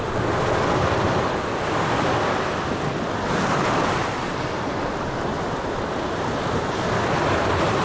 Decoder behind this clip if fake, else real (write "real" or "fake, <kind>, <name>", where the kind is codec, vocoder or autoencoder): real